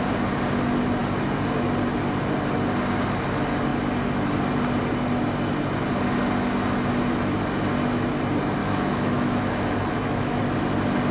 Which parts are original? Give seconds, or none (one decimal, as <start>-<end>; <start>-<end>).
0.0-8.6; 10.4-11.1